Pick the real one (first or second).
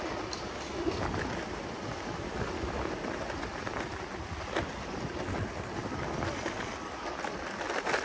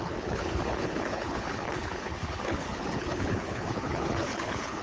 first